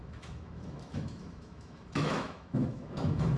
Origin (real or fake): fake